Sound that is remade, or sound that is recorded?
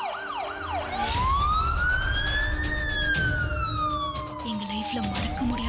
recorded